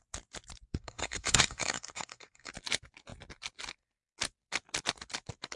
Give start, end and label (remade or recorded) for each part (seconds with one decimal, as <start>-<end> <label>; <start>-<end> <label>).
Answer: 0.0-0.7 recorded; 0.7-2.5 remade; 2.5-5.6 recorded